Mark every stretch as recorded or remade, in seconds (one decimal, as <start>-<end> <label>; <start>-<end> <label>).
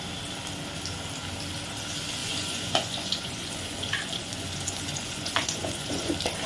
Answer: 0.0-2.2 recorded; 2.2-6.1 remade; 6.1-6.5 recorded